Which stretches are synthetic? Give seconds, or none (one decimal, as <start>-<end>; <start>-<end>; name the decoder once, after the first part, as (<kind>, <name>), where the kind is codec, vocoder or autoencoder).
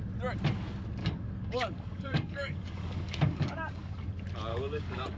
1.0-4.1 (codec, DAC); 4.5-5.2